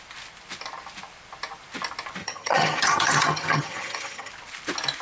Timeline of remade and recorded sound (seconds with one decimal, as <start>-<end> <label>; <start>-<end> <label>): 0.0-2.2 recorded; 2.2-4.3 remade; 4.3-5.0 recorded